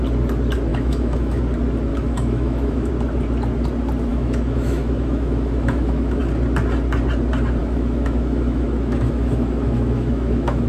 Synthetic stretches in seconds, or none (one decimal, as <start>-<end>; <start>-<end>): 0.7-1.4; 1.9-2.9; 4.1-6.2; 7.6-10.7